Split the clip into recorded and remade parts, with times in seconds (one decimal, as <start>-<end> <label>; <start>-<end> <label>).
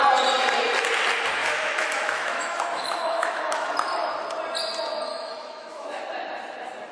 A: 0.0-1.4 recorded; 1.4-3.7 remade; 3.7-5.1 recorded; 5.1-6.0 remade; 6.0-6.9 recorded